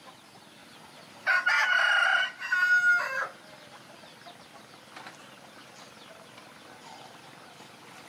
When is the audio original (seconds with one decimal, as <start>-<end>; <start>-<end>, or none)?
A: 0.0-0.6; 1.3-8.1